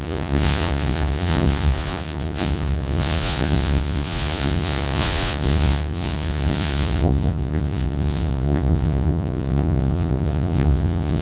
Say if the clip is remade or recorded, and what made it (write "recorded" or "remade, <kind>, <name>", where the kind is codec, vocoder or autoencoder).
remade, vocoder, Vocos